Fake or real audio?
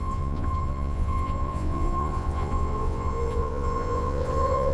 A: fake